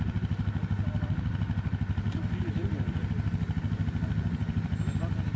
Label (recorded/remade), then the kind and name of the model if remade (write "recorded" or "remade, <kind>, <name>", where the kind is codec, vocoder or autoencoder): recorded